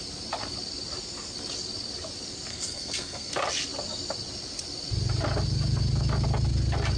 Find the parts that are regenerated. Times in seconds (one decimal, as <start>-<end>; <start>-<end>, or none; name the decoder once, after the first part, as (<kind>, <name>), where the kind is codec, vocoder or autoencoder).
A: 2.5-3.3 (codec, SNAC)